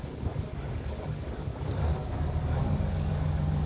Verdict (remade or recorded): remade